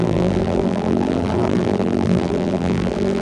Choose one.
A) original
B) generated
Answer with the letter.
B